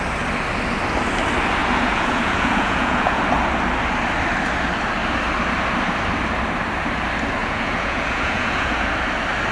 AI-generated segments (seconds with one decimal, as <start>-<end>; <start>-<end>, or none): 1.6-3.2; 7.4-8.9